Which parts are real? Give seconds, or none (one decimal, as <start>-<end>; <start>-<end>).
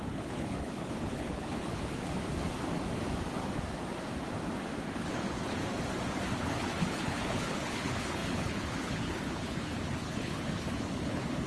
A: 2.0-4.8; 5.6-6.3